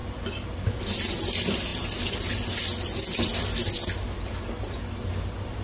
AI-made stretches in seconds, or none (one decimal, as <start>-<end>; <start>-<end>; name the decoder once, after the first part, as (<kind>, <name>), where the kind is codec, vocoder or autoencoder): none